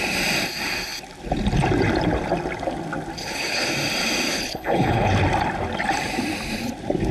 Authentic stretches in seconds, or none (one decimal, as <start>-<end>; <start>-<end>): 0.0-3.2; 3.7-4.3; 5.1-7.1